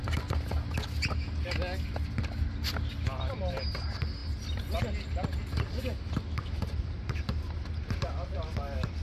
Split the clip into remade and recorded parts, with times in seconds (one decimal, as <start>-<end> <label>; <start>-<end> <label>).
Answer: 0.0-9.0 recorded